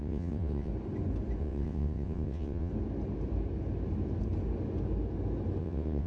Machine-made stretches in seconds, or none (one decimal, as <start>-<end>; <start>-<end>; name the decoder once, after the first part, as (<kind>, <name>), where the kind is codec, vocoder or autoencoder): 0.0-0.7 (vocoder, WaveNeXt); 1.4-2.7; 5.6-6.1